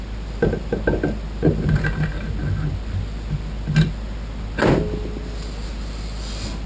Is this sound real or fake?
real